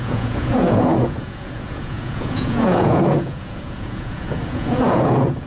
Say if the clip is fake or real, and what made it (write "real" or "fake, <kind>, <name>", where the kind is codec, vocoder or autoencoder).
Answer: fake, vocoder, Vocos